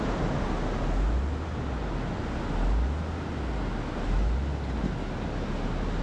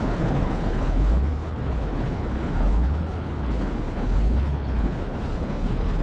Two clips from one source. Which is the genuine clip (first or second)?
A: first